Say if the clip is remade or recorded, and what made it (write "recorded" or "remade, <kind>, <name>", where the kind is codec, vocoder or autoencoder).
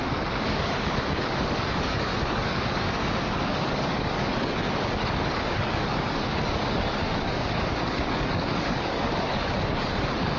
remade, codec, DAC